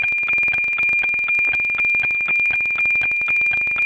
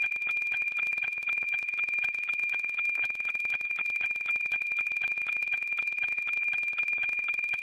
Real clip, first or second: first